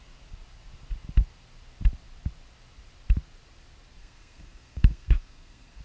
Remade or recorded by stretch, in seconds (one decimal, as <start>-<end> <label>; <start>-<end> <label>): 0.0-4.0 recorded; 4.0-5.8 remade